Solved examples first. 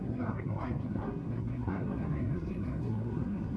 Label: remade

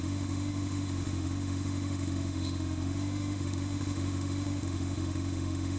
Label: remade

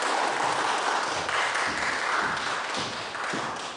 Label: recorded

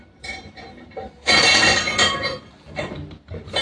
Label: remade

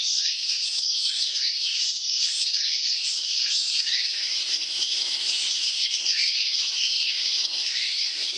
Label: remade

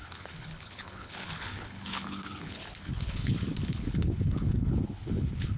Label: remade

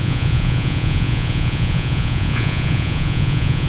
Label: remade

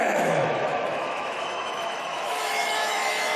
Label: remade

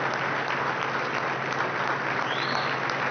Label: recorded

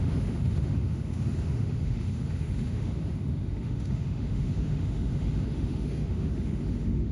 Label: remade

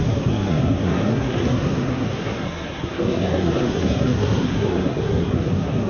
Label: remade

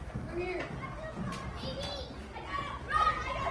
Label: recorded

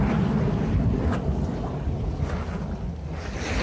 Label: recorded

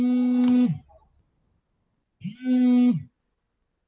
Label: recorded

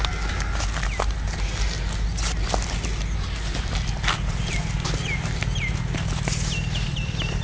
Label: recorded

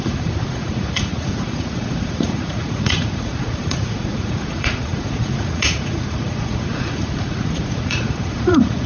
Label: remade